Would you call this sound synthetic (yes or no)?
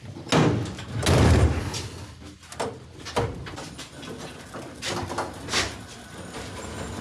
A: no